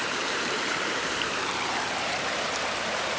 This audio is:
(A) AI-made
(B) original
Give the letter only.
A